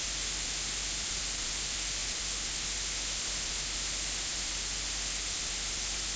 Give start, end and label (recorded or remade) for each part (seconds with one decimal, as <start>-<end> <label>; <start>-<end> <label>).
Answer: 0.0-1.1 recorded; 1.1-2.0 remade; 2.0-5.7 recorded; 5.7-6.2 remade